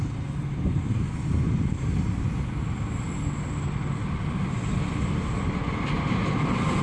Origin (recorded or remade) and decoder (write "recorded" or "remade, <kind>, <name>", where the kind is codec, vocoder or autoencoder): recorded